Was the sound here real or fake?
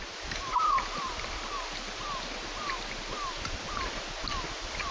real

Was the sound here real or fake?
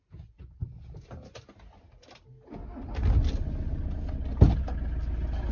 real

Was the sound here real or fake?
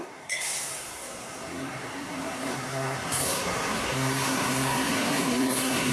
fake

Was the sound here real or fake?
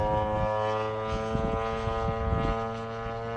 real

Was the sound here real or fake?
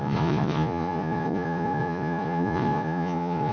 fake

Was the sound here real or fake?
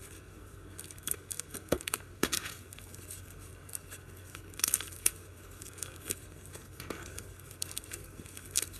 fake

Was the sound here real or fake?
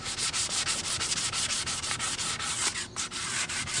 real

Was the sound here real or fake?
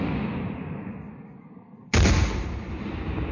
real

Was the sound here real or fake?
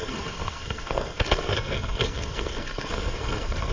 fake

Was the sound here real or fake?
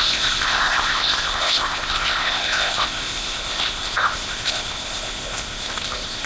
fake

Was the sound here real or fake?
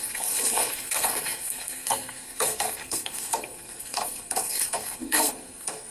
fake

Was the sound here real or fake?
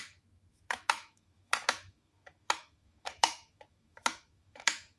fake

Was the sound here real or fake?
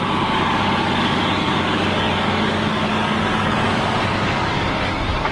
fake